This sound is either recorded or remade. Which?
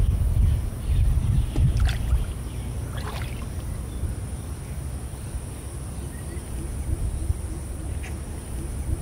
recorded